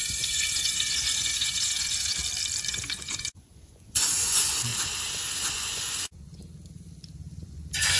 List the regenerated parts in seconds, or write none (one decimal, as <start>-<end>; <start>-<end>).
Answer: 0.0-2.2; 2.7-4.7; 5.5-6.4; 7.4-8.0